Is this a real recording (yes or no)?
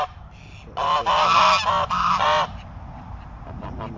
yes